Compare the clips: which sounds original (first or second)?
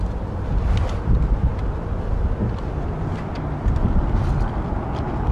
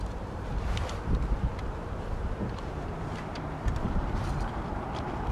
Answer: first